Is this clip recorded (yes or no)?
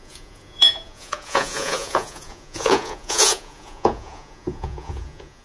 no